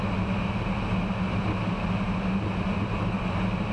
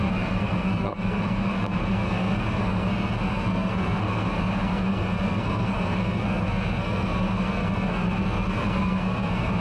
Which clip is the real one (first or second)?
first